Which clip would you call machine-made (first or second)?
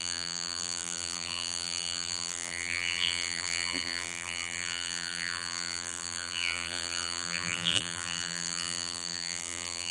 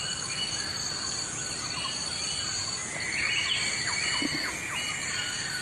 first